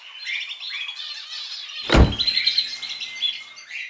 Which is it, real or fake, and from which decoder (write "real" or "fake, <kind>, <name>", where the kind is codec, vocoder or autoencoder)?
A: real